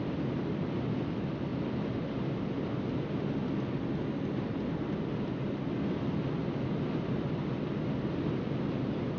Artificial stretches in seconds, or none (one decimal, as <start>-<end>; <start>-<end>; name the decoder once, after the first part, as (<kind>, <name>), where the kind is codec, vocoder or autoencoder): none